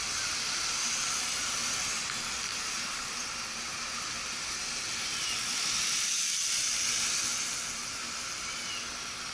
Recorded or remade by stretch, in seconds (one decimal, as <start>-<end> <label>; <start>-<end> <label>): 0.0-2.5 recorded; 2.5-3.8 remade; 3.8-7.3 recorded; 7.3-8.0 remade; 8.0-9.3 recorded